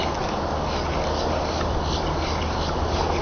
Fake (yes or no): no